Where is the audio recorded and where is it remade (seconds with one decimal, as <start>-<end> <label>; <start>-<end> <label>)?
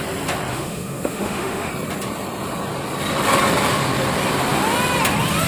0.0-0.5 recorded; 0.5-1.7 remade; 1.7-5.5 recorded